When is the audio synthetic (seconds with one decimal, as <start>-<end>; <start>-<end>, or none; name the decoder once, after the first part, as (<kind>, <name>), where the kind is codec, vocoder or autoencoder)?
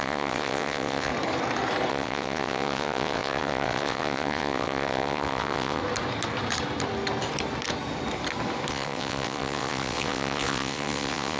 0.0-1.1 (vocoder, WaveNeXt); 1.9-5.8; 8.7-11.4